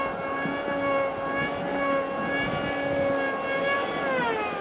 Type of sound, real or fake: fake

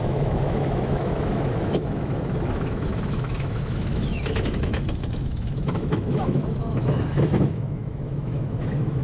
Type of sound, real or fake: fake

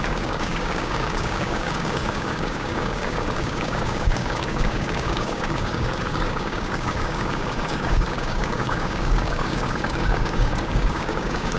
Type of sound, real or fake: fake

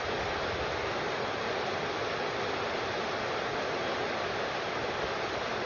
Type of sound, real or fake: real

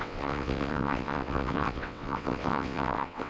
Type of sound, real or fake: fake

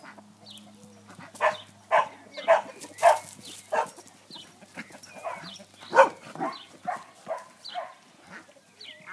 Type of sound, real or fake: real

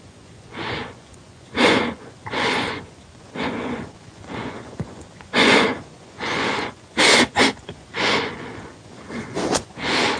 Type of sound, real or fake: fake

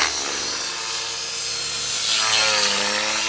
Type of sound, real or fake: real